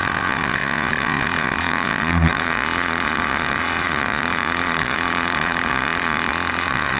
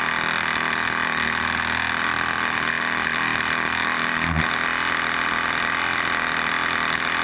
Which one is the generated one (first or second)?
first